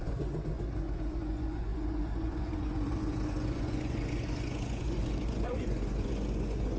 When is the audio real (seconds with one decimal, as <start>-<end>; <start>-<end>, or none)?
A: none